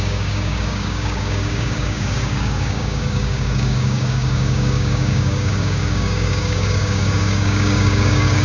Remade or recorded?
remade